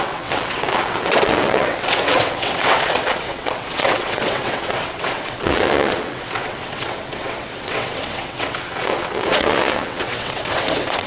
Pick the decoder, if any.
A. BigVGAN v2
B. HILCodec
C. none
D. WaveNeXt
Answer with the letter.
D